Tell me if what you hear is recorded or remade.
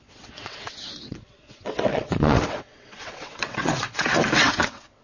remade